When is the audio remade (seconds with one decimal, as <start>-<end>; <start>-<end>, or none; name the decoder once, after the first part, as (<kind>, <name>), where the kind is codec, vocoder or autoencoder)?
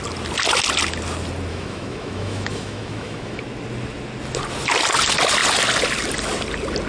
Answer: 1.5-3.4 (autoencoder, DAC-VAE)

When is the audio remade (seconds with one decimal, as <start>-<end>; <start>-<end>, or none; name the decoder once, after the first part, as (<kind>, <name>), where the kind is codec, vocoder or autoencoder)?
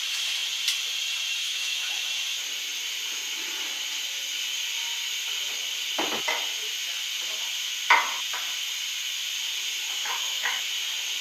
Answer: 1.4-2.1 (autoencoder, DAC-VAE); 10.0-10.7